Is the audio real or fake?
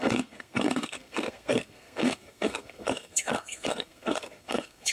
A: fake